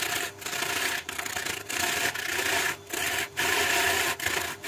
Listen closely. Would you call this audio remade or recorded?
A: recorded